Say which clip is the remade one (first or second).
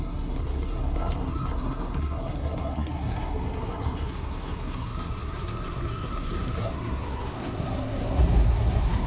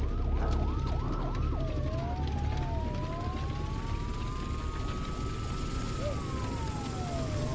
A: first